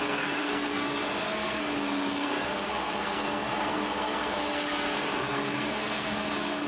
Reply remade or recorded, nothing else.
remade